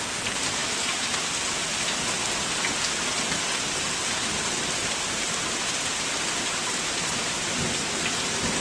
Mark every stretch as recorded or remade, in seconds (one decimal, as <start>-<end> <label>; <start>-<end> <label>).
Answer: 0.0-8.6 recorded